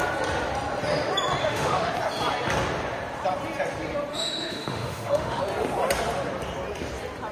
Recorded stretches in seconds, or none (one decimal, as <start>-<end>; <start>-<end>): 0.0-1.4; 1.9-4.1; 5.4-7.3